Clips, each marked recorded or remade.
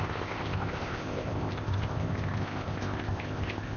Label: remade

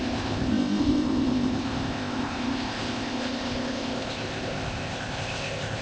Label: remade